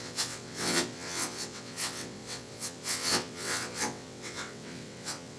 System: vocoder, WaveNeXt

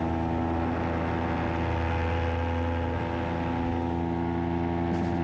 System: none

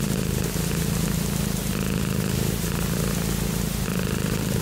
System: none